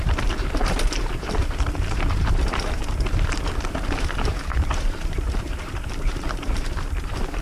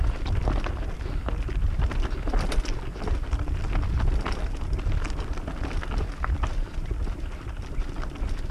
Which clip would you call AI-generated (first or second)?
first